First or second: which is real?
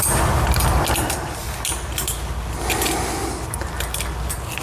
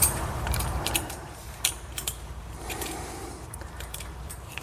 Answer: first